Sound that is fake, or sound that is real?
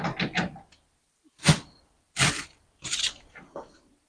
real